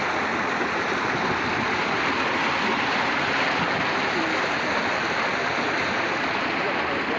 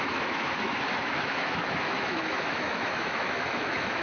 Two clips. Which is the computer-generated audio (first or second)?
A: second